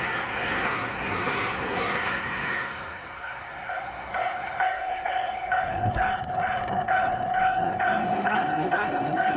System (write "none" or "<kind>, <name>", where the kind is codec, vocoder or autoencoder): codec, SNAC